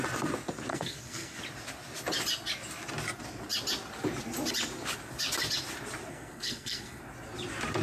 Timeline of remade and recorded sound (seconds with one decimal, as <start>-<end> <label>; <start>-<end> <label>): 0.0-0.7 recorded; 0.7-1.4 remade; 1.4-6.1 recorded; 6.1-7.0 remade; 7.0-7.8 recorded